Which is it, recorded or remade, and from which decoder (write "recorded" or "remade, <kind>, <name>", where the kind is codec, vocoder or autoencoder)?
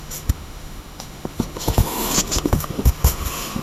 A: remade, autoencoder, DAC-VAE